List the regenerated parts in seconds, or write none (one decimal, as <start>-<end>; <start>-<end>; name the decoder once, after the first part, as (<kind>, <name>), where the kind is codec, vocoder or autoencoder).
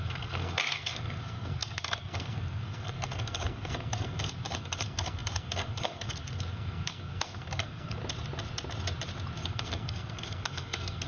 0.0-8.0 (codec, SNAC); 9.4-11.1